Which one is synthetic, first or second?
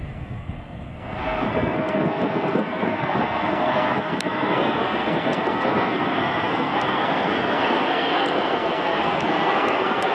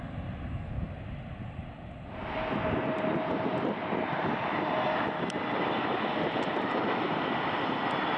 first